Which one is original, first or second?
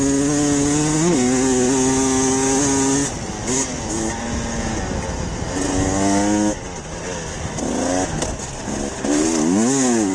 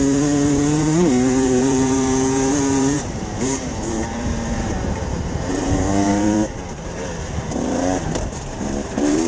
first